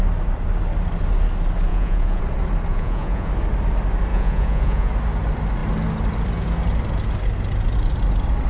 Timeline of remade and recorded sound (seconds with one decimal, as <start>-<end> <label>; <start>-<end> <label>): 0.0-1.7 recorded; 1.7-2.2 remade; 2.2-2.7 recorded; 2.7-3.3 remade; 3.3-4.1 recorded; 4.1-4.9 remade; 4.9-8.5 recorded